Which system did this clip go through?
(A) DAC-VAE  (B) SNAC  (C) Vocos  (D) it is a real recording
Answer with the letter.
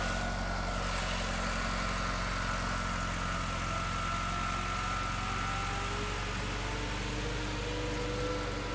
D